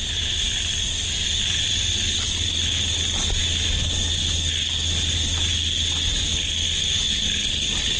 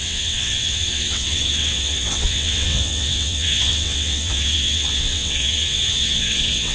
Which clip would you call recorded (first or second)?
first